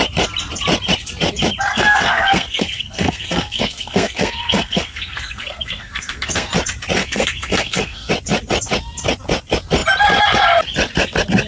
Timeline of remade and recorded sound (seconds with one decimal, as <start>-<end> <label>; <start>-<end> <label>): 0.0-1.7 recorded; 1.7-6.5 remade; 6.5-7.0 recorded; 7.0-8.1 remade; 8.1-11.5 recorded